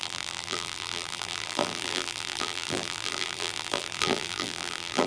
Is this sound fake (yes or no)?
yes